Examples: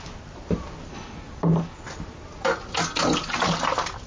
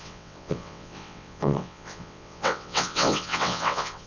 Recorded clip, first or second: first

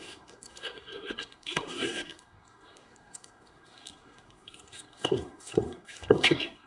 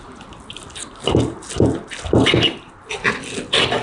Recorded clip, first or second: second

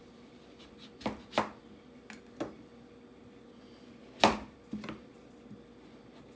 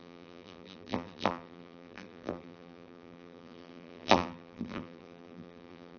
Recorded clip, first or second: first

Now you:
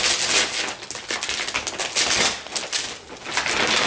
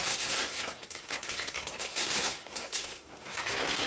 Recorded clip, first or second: first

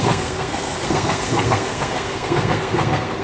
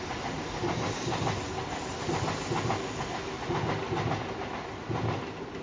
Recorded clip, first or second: second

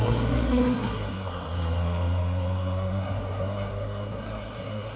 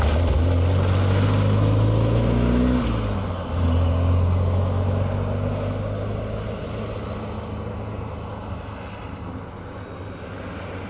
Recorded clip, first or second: second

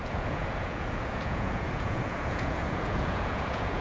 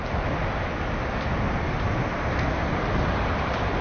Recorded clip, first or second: second